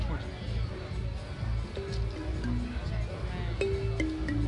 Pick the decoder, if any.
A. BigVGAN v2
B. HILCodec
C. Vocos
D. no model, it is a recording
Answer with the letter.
D